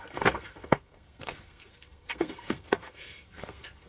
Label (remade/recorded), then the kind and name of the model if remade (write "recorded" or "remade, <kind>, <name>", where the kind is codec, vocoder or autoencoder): remade, codec, SNAC